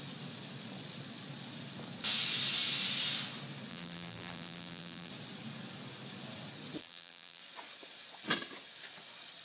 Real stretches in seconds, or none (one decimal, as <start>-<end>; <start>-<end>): 0.0-3.7; 5.1-6.8; 7.4-9.4